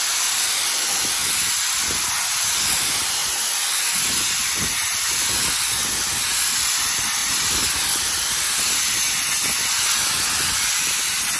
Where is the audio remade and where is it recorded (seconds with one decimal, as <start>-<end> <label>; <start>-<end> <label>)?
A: 0.0-7.2 recorded; 7.2-8.7 remade; 8.7-11.4 recorded